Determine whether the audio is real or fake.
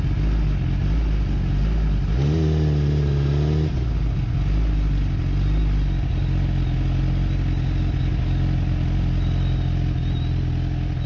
real